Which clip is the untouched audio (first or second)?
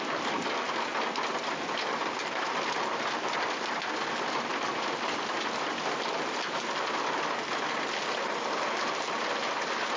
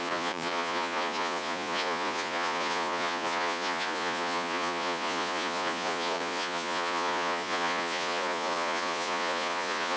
first